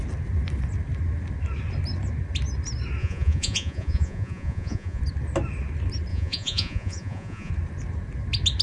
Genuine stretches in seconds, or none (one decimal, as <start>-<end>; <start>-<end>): 0.0-3.0; 5.0-6.1; 7.5-8.6